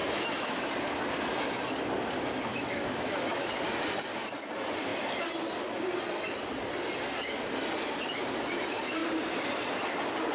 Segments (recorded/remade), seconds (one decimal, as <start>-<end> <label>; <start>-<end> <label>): 0.0-0.7 remade; 0.7-2.5 recorded; 2.5-3.5 remade; 3.5-10.3 recorded